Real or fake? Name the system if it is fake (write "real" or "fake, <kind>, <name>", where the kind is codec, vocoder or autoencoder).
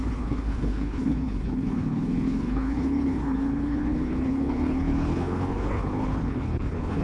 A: fake, codec, HILCodec